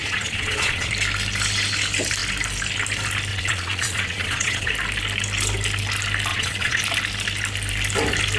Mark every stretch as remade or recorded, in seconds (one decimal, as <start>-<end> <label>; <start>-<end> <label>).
0.0-0.9 remade; 0.9-3.3 recorded; 3.3-4.7 remade; 4.7-6.3 recorded; 6.3-6.8 remade; 6.8-8.4 recorded